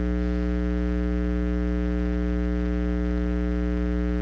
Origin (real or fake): real